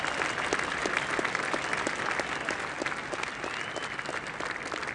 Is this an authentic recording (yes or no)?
yes